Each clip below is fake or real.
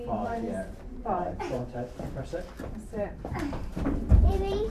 fake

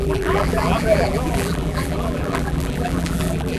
fake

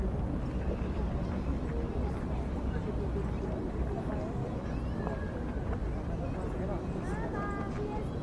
real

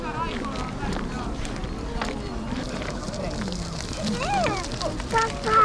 real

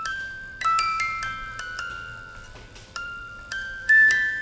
fake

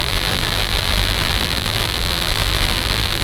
fake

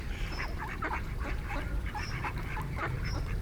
fake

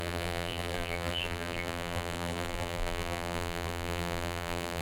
fake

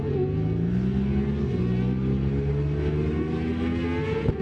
real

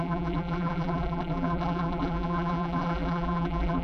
fake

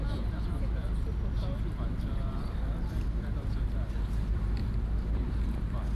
fake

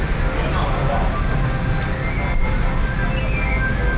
real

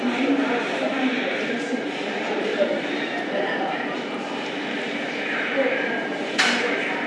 fake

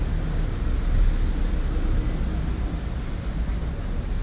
real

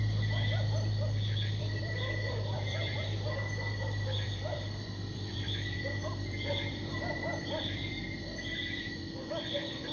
fake